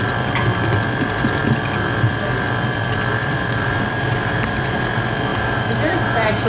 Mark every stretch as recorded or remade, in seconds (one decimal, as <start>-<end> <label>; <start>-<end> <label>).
0.0-3.2 recorded; 3.2-4.8 remade; 4.8-5.3 recorded; 5.3-6.5 remade